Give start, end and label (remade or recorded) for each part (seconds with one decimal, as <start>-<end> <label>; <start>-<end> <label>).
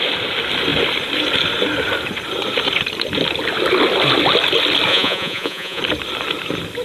0.0-4.9 recorded; 4.9-5.8 remade; 5.8-6.8 recorded